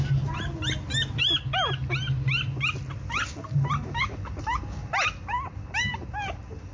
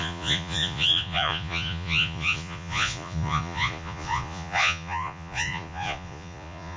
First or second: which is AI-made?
second